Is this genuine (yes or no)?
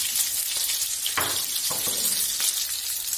yes